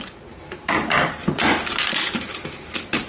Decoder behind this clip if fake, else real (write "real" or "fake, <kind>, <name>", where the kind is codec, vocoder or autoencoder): real